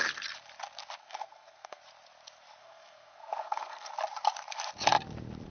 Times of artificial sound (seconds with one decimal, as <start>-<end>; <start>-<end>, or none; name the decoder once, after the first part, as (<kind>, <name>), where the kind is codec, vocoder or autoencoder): 1.0-1.8 (codec, SNAC); 2.6-3.9